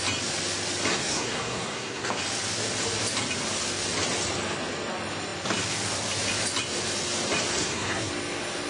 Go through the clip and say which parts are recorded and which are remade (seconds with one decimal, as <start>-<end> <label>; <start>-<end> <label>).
0.0-0.9 recorded; 0.9-2.1 remade; 2.1-7.6 recorded; 7.6-8.1 remade; 8.1-8.7 recorded